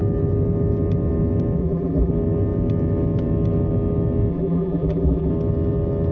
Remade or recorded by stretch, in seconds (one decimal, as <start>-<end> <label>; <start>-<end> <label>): 0.0-1.6 recorded; 1.6-2.1 remade; 2.1-4.3 recorded; 4.3-5.3 remade; 5.3-6.1 recorded